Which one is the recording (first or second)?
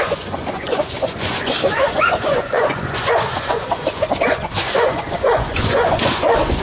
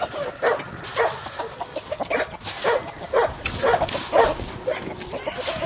second